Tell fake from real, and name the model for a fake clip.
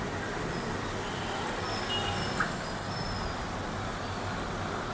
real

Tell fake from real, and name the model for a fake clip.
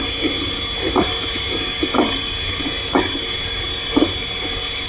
real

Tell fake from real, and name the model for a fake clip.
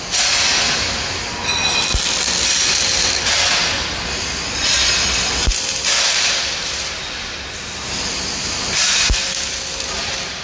real